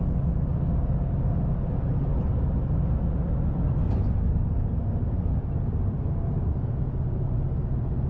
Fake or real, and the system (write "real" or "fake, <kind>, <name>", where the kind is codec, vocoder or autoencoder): real